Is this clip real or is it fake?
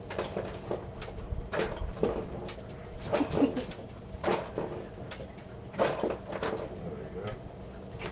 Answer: real